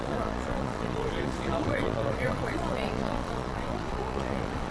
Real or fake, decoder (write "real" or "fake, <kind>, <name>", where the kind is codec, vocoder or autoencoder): fake, vocoder, Vocos